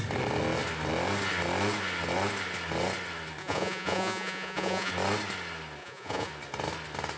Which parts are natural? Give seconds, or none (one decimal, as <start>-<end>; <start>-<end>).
0.0-3.4; 4.9-5.8; 6.3-7.2